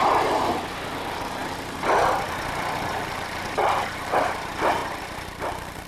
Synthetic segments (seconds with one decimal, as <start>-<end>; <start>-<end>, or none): none